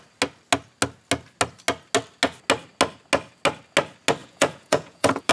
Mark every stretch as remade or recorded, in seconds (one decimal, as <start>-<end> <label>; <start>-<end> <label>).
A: 0.0-4.2 recorded; 4.2-5.3 remade